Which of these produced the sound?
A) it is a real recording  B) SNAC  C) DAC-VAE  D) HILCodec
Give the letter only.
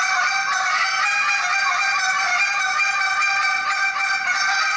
A